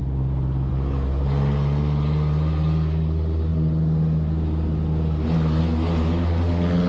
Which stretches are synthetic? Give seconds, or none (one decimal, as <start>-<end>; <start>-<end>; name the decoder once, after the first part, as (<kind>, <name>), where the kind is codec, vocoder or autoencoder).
none